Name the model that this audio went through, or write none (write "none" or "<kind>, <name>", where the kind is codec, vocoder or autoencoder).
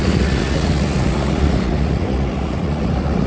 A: vocoder, Vocos